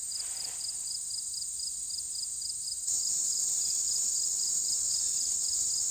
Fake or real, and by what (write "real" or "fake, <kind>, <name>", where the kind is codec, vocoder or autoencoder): real